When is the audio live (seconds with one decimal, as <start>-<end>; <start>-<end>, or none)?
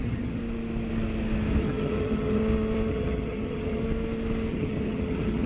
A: 0.4-1.6; 2.4-2.9; 3.8-4.5